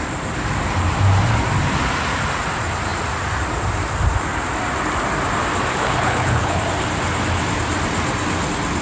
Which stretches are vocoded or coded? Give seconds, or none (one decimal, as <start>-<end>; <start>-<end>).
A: 5.7-6.6